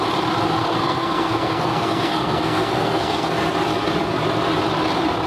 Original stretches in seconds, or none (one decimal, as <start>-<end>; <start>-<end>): 0.0-0.6; 3.3-5.3